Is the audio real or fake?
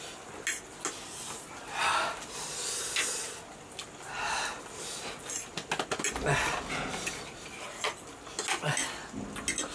real